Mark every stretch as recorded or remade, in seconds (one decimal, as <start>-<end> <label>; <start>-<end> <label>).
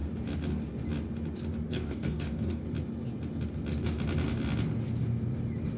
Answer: 0.0-1.7 recorded; 1.7-2.6 remade; 2.6-5.8 recorded